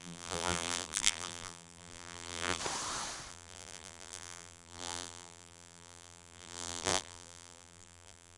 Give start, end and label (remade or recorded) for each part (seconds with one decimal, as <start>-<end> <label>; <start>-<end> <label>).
0.0-2.6 remade; 2.6-3.3 recorded; 3.3-8.4 remade